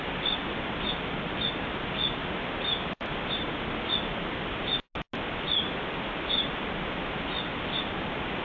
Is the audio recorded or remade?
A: recorded